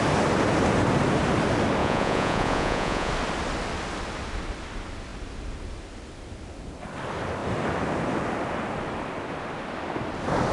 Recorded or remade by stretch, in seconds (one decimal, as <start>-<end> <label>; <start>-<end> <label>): 0.0-1.8 recorded; 1.8-3.1 remade; 3.1-10.5 recorded